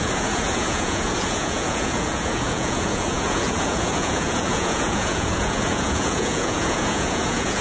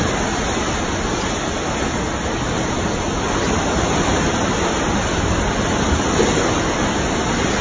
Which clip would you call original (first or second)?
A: second